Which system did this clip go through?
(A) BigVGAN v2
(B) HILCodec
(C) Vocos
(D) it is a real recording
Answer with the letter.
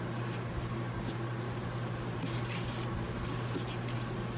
D